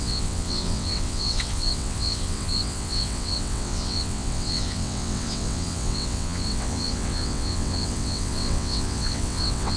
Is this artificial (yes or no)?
yes